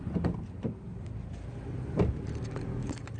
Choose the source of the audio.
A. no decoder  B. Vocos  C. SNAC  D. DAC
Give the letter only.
A